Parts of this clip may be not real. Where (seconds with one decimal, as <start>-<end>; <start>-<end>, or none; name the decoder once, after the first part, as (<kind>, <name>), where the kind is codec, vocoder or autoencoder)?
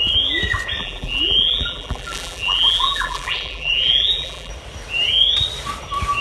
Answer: 0.8-4.5 (vocoder, BigVGAN v2)